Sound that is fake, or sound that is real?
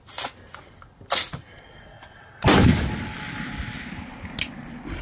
real